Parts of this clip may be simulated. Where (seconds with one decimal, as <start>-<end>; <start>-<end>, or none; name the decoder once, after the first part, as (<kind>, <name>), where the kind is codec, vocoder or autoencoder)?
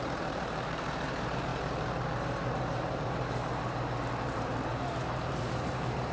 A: 0.0-6.1 (vocoder, BigVGAN v2)